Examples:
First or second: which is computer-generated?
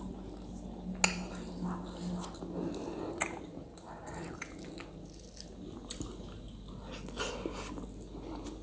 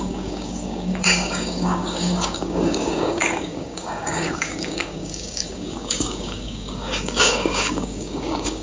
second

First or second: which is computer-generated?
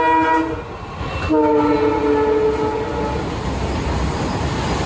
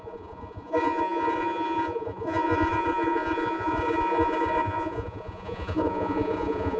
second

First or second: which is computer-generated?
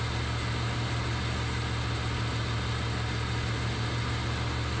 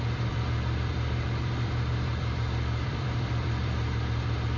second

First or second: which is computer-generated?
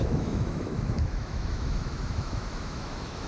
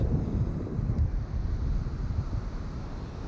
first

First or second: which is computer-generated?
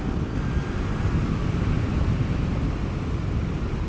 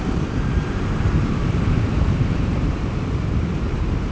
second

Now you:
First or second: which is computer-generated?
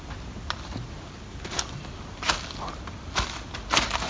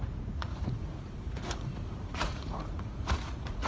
second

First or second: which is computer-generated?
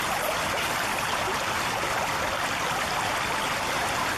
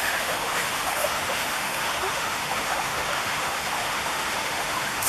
second